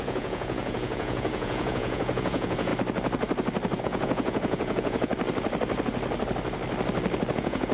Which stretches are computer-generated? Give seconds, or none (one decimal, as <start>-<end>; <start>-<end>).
0.0-2.7; 3.8-5.1; 7.3-7.7